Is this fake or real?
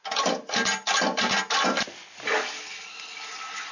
real